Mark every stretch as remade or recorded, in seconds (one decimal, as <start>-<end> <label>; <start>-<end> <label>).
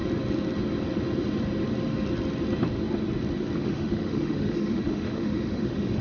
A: 0.0-3.6 recorded; 3.6-6.0 remade